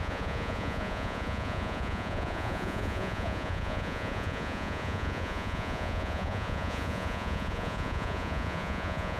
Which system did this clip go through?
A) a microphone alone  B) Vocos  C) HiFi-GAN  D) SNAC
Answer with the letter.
B